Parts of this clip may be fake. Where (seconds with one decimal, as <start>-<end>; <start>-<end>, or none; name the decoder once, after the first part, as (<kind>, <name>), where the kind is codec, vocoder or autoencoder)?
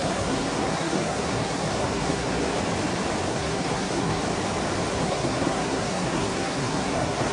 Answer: 0.0-2.6 (codec, SNAC); 3.3-4.2; 4.9-7.3